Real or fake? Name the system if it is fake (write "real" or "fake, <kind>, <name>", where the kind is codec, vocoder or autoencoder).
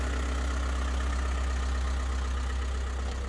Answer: real